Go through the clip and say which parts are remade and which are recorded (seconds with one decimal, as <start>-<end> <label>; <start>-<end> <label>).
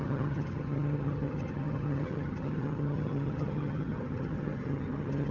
0.0-5.3 remade